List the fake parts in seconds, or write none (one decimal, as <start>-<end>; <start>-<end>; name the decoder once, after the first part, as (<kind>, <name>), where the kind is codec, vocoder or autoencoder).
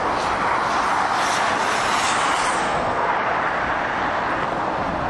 2.6-3.1 (codec, SNAC)